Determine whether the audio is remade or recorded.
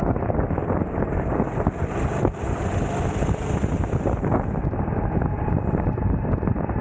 recorded